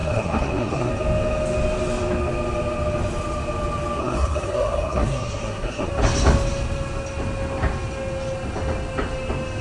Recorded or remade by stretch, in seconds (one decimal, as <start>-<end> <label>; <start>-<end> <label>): 0.0-0.9 remade; 0.9-4.0 recorded; 4.0-5.9 remade; 5.9-9.6 recorded